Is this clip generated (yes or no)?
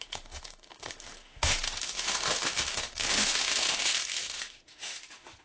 yes